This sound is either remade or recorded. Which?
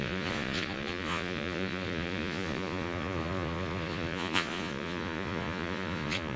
remade